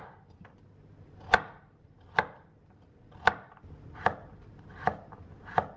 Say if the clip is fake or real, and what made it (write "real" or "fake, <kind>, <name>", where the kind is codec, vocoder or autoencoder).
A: real